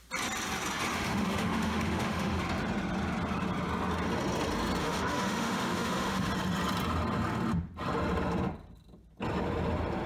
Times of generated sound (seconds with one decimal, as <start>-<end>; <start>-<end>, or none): 0.9-2.4; 4.8-6.3